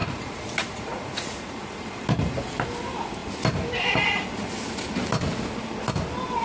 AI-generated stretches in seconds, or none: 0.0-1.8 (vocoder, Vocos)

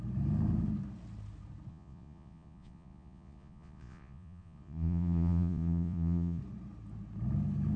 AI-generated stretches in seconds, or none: 1.7-6.4 (vocoder, Vocos)